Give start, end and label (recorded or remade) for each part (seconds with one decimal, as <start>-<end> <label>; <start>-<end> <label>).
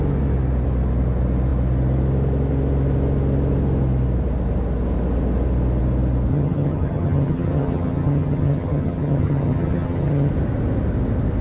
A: 0.0-6.3 recorded; 6.3-10.3 remade; 10.3-11.4 recorded